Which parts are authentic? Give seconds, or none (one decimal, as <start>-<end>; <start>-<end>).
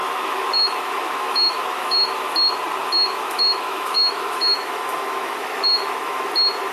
2.3-2.8; 6.2-6.7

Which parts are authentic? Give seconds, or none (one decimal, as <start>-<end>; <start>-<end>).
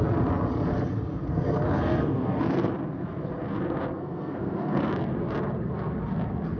0.0-1.1; 2.7-4.0; 4.9-6.6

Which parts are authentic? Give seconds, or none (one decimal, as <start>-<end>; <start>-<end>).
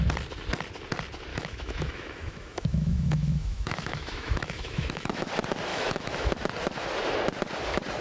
0.0-1.3; 5.3-5.7; 6.3-8.0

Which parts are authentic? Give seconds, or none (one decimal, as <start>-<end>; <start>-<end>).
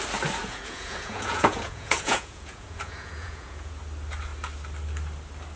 0.0-0.4; 3.8-5.6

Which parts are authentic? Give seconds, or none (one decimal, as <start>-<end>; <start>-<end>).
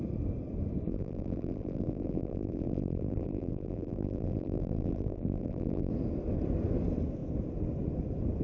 0.0-0.9; 5.9-8.4